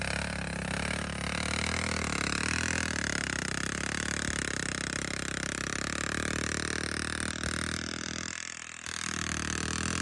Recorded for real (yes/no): yes